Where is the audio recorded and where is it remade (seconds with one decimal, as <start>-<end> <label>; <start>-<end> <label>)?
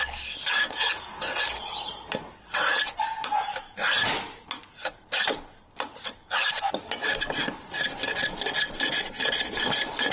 0.0-10.1 recorded